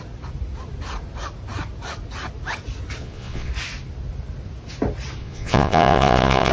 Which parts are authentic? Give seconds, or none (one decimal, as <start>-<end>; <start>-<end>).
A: 0.0-3.0; 3.5-5.2